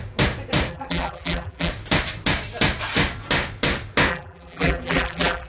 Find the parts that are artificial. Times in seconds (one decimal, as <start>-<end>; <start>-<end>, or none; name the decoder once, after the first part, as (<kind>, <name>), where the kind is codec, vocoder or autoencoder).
0.7-1.7 (vocoder, BigVGAN v2); 4.1-5.5